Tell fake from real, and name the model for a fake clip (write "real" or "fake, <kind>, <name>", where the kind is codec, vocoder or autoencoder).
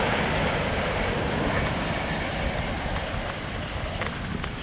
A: real